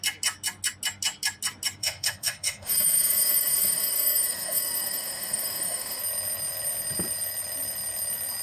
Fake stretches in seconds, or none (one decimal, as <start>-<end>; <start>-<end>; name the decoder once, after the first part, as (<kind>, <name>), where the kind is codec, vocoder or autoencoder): 1.8-6.0 (autoencoder, DAC-VAE)